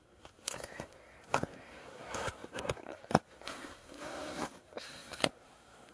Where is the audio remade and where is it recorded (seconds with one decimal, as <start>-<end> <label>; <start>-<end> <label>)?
0.0-5.9 remade